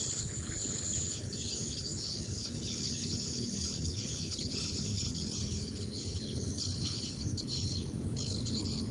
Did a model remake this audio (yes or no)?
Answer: yes